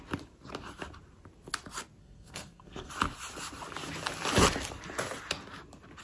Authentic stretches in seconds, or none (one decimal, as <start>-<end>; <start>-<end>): 0.0-2.0; 2.9-6.0